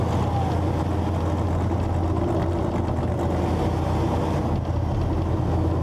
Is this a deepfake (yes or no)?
no